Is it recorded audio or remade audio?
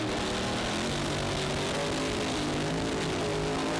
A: recorded